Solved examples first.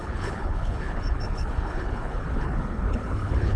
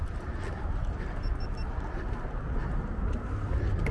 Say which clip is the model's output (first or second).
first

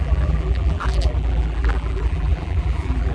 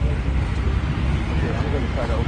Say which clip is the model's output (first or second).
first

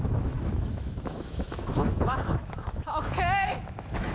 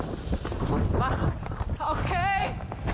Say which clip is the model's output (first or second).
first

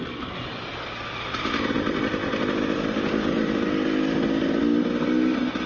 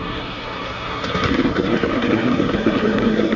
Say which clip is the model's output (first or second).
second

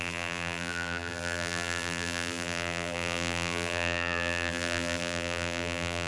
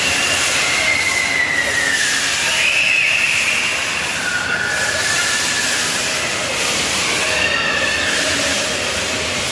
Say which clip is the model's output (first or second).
first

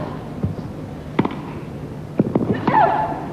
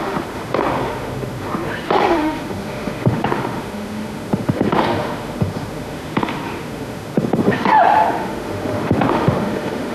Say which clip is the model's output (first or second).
second